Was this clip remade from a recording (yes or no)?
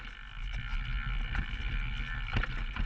no